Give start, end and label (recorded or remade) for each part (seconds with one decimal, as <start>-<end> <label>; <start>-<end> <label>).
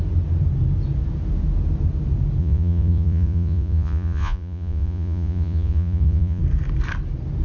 0.0-2.4 recorded; 2.4-6.4 remade; 6.4-7.4 recorded